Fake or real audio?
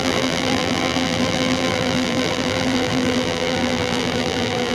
fake